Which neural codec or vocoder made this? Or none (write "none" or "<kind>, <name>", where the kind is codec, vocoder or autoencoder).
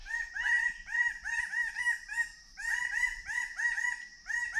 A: vocoder, BigVGAN v2